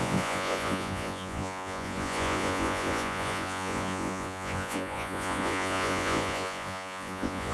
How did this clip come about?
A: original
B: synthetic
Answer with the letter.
B